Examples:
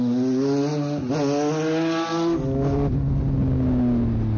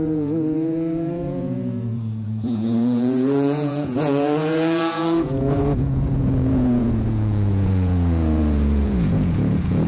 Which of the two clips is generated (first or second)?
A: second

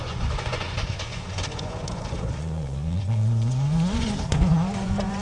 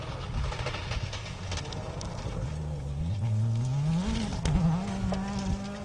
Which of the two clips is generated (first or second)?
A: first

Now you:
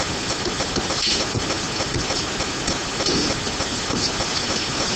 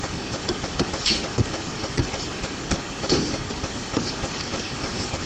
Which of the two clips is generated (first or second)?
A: second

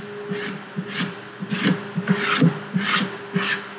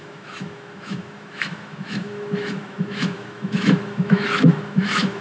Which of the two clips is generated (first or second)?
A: second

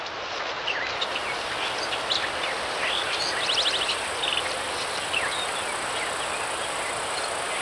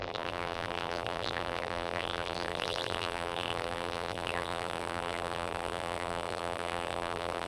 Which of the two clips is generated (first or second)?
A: second